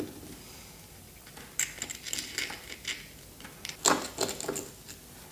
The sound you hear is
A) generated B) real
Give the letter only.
B